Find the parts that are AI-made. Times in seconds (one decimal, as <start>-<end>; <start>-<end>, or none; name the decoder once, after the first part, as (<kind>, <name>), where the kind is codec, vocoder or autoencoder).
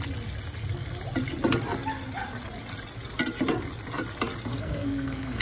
4.5-5.4 (codec, SNAC)